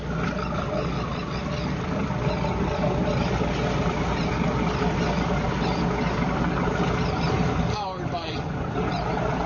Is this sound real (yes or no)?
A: yes